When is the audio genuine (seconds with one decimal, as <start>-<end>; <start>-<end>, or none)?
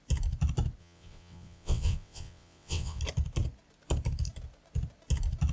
0.0-0.8; 3.0-5.5